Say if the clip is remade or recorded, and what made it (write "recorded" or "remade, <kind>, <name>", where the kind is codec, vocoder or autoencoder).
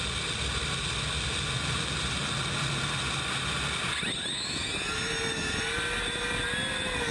recorded